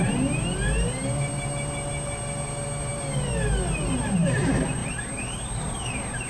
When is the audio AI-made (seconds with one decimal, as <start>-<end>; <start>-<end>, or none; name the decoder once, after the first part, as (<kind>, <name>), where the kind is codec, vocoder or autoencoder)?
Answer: none